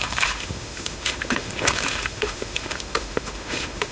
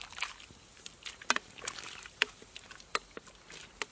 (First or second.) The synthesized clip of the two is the first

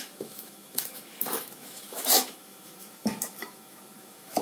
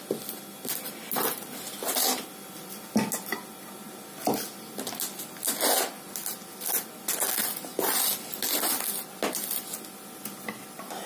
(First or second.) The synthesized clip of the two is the first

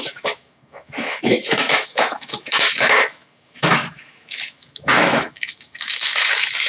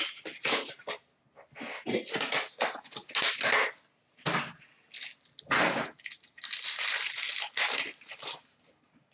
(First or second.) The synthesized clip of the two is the first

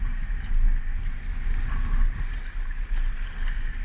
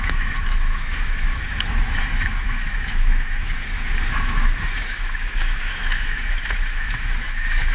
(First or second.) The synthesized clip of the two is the second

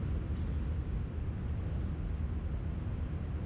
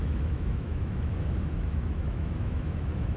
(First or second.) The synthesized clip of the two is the second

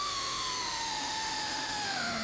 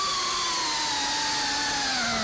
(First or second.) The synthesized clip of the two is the first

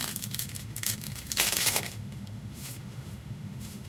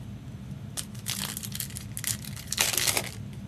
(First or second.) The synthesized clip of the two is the first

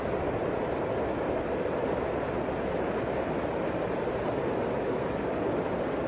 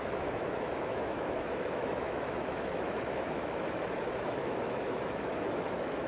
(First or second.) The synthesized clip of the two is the second